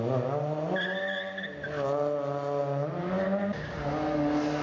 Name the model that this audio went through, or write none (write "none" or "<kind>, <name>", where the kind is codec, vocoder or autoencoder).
none